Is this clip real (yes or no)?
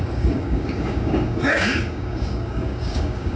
no